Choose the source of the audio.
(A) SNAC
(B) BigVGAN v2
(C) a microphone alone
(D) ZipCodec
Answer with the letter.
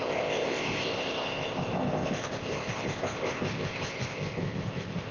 D